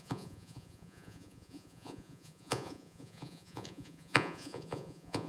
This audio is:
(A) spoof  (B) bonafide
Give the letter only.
A